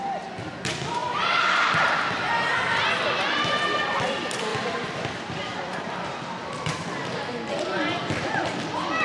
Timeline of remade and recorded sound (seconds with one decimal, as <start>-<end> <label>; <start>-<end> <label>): 0.0-1.0 recorded; 1.0-1.7 remade; 1.7-4.5 recorded; 4.5-5.9 remade; 5.9-9.0 recorded